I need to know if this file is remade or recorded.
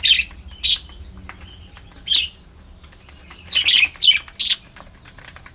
recorded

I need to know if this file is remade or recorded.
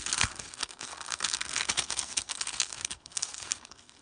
remade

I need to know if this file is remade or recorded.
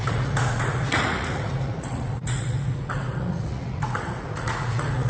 remade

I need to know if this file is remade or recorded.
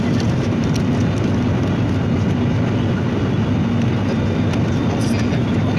recorded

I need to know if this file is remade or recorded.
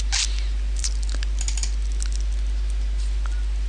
recorded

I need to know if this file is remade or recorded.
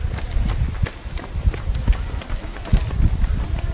recorded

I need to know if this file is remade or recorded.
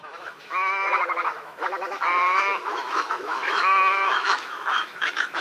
remade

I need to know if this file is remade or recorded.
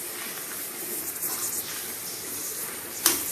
recorded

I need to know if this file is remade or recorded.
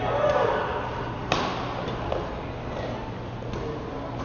recorded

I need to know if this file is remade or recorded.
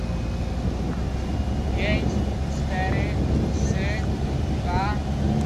recorded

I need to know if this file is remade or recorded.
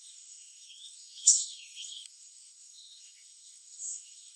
remade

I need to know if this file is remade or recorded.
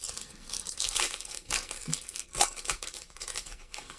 remade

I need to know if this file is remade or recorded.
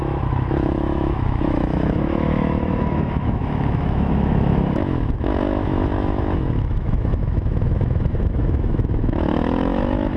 remade